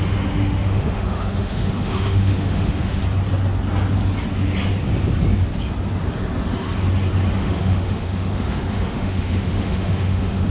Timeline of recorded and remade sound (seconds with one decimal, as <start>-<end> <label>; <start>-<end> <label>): 0.0-3.0 remade; 3.0-7.4 recorded; 7.4-10.5 remade